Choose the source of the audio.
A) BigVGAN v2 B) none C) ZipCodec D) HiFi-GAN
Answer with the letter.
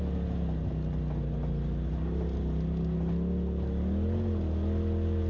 B